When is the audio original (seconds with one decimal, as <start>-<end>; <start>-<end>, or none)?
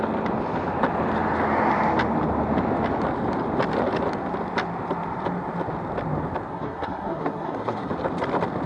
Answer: 0.0-6.5; 7.9-8.7